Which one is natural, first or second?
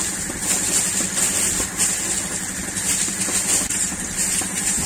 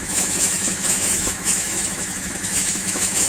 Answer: first